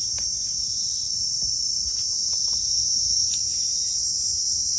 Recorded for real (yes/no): yes